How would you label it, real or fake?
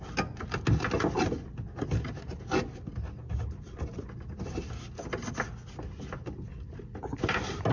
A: real